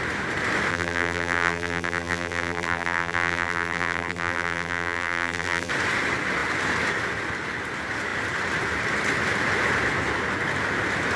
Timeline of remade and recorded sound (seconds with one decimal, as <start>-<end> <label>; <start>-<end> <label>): 0.0-0.7 recorded; 0.7-5.7 remade; 5.7-11.2 recorded